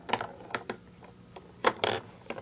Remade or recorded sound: remade